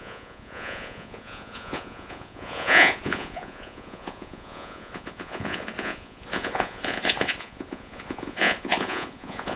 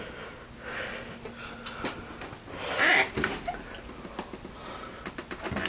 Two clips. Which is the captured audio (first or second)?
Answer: second